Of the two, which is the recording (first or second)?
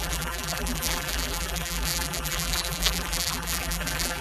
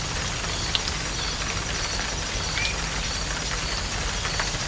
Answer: second